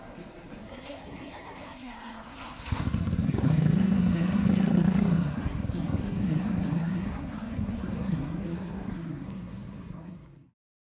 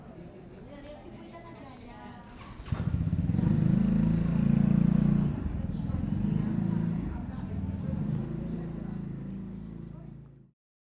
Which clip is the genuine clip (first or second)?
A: second